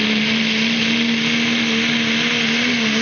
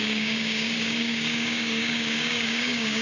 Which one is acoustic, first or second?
first